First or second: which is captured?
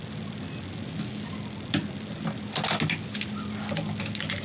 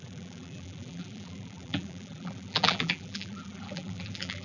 first